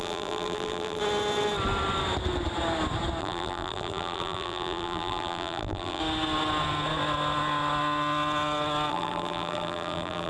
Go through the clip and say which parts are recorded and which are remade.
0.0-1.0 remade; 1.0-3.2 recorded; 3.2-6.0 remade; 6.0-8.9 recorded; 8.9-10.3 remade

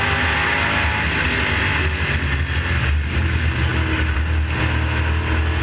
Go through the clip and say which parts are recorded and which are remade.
0.0-5.6 recorded

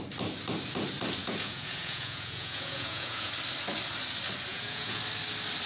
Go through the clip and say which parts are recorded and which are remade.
0.0-1.2 recorded; 1.2-3.3 remade; 3.3-4.5 recorded; 4.5-5.0 remade; 5.0-5.7 recorded

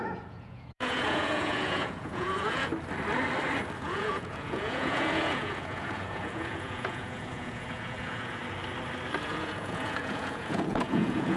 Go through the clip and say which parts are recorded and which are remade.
0.0-2.7 remade; 2.7-3.8 recorded; 3.8-8.4 remade; 8.4-9.2 recorded; 9.2-11.4 remade

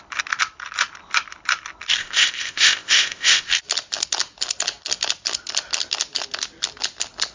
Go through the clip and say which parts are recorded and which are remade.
0.0-2.0 recorded; 2.0-3.5 remade; 3.5-7.3 recorded

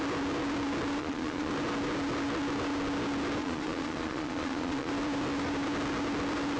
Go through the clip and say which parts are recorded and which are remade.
0.0-1.0 recorded; 1.0-1.5 remade; 1.5-3.4 recorded; 3.4-4.9 remade; 4.9-6.6 recorded

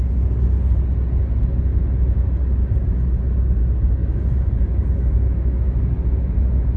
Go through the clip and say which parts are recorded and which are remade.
0.0-4.0 recorded; 4.0-6.8 remade

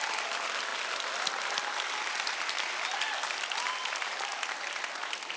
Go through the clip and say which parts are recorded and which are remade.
0.0-5.4 recorded